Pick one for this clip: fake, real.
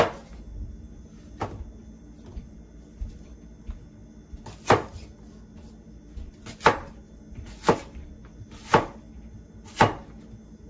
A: real